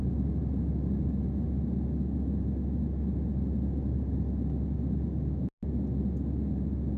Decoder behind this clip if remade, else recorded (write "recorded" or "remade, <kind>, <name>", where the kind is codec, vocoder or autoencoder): recorded